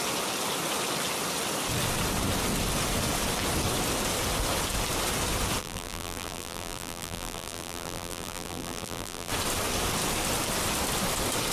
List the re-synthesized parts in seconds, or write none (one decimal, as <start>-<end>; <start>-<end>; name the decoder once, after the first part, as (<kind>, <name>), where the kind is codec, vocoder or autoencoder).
5.6-9.3 (vocoder, BigVGAN v2)